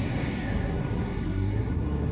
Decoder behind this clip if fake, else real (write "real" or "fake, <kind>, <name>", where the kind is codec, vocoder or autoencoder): fake, codec, SNAC